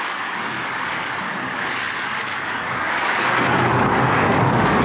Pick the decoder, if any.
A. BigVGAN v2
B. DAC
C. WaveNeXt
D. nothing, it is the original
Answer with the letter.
B